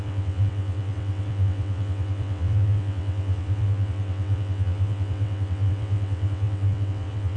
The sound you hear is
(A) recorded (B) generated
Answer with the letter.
B